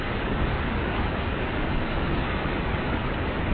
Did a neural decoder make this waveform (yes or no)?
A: yes